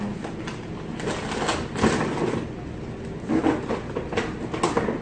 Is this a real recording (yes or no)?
yes